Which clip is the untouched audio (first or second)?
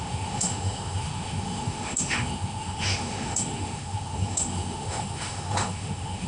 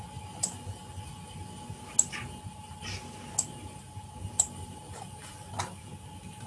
second